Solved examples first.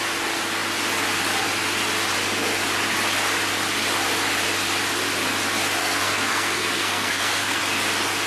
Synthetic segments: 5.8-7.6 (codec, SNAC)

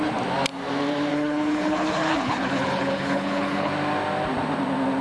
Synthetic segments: 1.1-3.7 (codec, HILCodec)

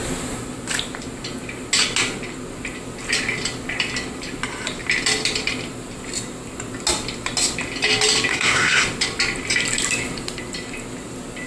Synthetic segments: 8.3-8.8 (codec, SNAC)

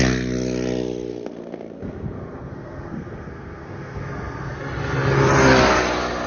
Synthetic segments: 1.1-4.6 (codec, SNAC)

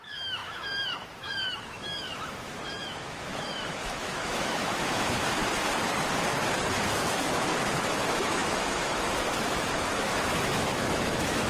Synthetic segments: 0.0-5.4 (autoencoder, DAC-VAE); 7.0-11.5

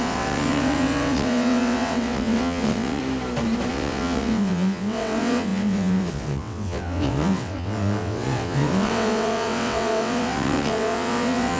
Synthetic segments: 0.0-3.0 (vocoder, WaveNeXt); 3.7-11.6

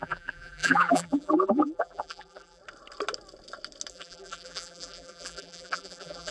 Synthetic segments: 0.0-2.6 (vocoder, BigVGAN v2); 3.9-6.3

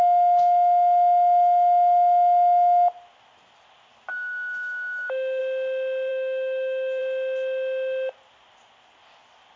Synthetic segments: 4.1-5.4 (autoencoder, DAC-VAE); 6.1-7.0